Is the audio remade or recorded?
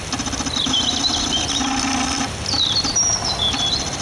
recorded